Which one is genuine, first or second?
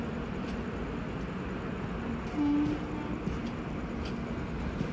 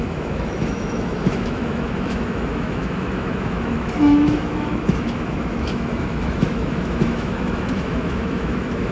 first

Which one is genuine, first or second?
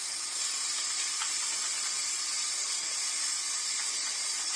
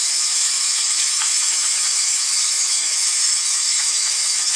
first